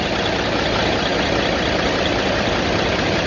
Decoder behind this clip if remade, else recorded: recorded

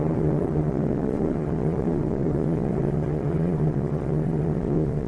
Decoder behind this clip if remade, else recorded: remade, vocoder, Vocos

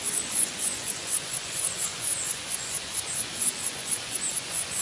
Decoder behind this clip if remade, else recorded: remade, vocoder, Vocos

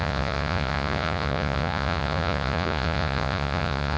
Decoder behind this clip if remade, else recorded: remade, vocoder, Vocos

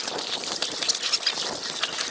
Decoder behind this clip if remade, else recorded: recorded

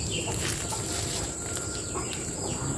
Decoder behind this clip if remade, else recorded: recorded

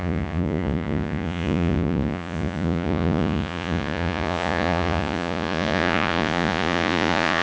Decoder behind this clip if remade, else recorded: remade, vocoder, Vocos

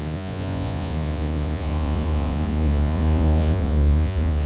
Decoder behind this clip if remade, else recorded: remade, vocoder, Vocos